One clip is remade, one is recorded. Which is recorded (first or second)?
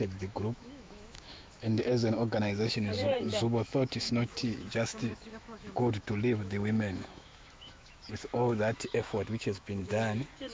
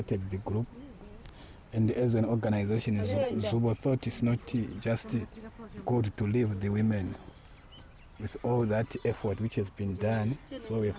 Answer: second